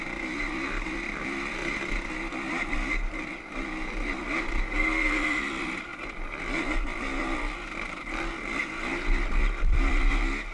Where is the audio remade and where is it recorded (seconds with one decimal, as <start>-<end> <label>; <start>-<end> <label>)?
0.0-1.6 remade; 1.6-2.3 recorded; 2.3-10.5 remade